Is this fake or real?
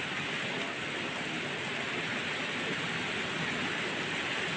real